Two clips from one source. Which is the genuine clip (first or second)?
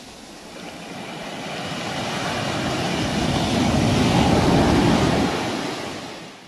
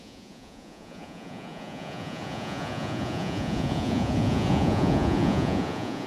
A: first